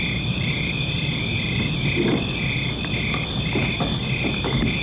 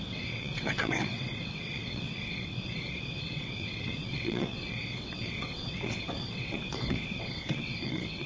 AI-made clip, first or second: second